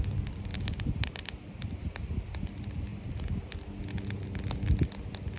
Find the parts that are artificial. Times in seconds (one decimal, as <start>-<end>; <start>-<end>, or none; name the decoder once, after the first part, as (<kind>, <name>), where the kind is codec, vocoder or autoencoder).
0.5-1.2 (vocoder, BigVGAN v2)